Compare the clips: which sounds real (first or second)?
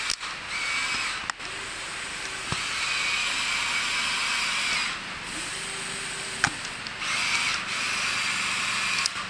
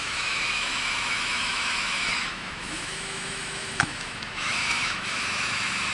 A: first